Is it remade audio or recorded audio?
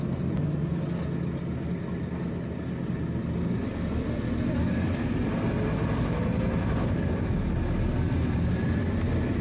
recorded